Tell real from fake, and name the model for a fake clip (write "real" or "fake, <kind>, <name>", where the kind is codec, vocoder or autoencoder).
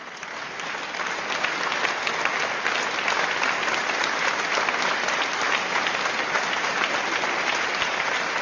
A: real